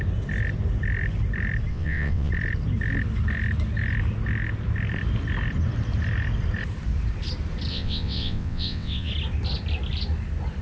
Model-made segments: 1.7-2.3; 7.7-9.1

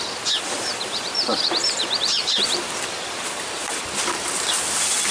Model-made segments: 0.7-3.8

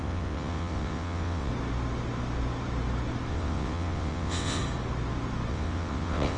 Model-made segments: 0.0-1.5; 3.3-4.6; 5.5-6.4

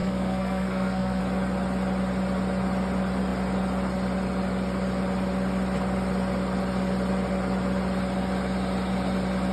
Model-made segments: 0.0-1.2

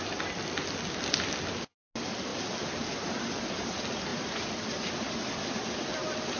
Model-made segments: 4.1-5.4